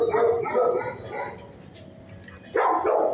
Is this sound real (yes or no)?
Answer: yes